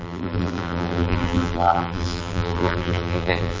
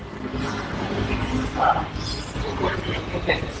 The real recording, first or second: second